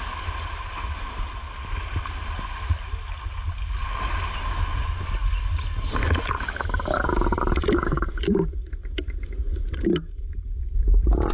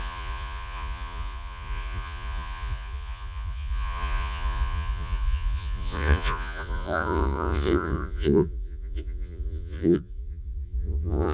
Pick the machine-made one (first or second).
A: second